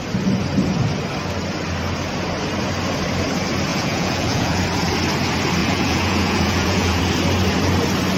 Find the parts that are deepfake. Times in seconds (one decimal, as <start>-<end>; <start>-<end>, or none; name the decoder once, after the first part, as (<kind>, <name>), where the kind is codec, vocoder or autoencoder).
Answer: 3.7-4.6 (vocoder, Vocos); 5.6-7.0